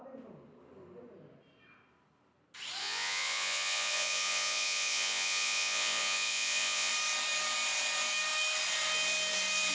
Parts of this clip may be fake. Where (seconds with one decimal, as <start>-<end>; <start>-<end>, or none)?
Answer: 2.8-6.9